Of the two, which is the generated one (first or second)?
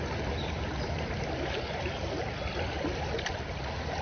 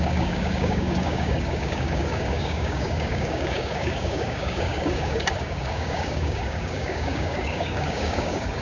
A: second